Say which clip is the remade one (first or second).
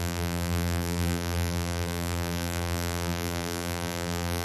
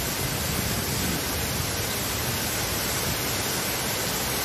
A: first